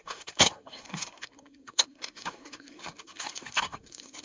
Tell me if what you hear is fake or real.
fake